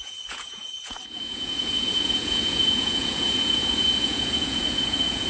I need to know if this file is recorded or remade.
remade